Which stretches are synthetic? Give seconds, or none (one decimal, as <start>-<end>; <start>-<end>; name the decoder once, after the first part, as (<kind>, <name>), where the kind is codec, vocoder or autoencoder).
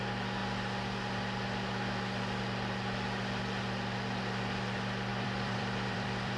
5.1-6.4 (vocoder, BigVGAN v2)